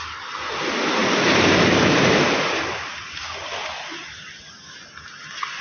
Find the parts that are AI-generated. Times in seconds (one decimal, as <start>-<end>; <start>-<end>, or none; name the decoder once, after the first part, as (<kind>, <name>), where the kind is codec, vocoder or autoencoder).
none